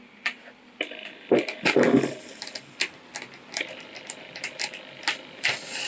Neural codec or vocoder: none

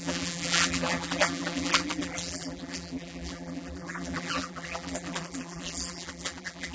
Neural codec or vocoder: vocoder, BigVGAN v2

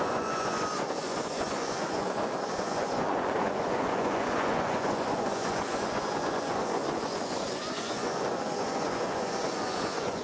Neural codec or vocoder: vocoder, Vocos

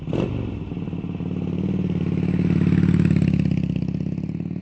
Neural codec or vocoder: none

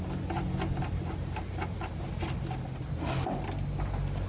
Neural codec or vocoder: none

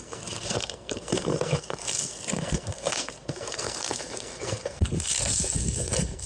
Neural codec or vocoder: codec, SNAC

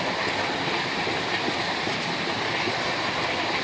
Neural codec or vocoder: vocoder, BigVGAN v2